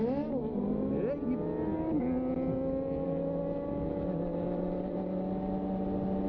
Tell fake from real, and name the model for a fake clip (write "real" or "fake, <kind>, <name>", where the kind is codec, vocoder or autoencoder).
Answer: real